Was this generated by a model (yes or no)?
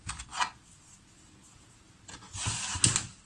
no